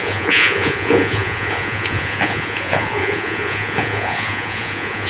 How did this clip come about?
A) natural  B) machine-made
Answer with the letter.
B